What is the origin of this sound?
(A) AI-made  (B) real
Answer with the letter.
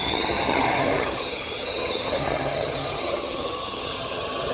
A